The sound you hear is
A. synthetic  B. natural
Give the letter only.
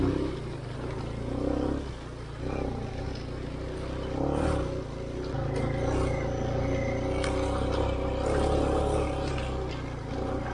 B